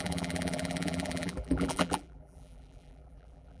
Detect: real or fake fake